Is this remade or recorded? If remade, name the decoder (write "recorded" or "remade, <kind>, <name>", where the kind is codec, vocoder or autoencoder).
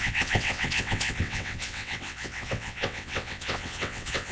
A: remade, vocoder, WaveNeXt